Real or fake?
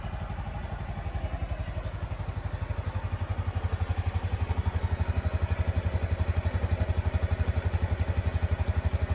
real